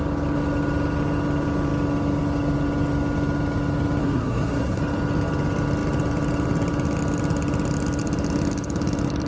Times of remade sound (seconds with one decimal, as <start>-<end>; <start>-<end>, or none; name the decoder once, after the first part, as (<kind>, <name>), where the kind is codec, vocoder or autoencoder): 4.0-4.8 (codec, SNAC)